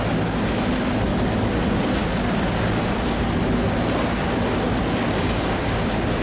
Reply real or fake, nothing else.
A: real